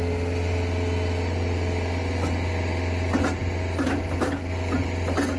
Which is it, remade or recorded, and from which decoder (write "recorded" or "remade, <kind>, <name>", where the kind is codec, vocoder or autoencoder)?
recorded